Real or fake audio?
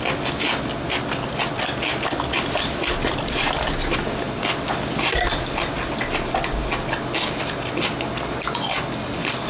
real